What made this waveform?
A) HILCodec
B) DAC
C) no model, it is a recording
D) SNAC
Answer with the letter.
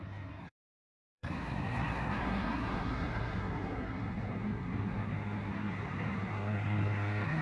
D